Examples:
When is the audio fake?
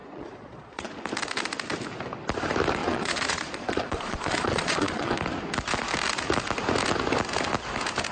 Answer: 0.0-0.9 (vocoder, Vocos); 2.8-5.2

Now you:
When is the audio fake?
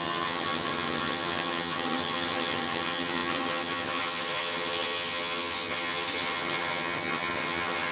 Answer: 0.0-7.9 (vocoder, HiFi-GAN)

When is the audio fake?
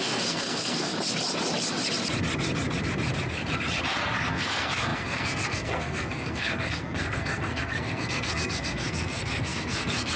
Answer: 0.0-0.9 (codec, SNAC); 4.3-10.2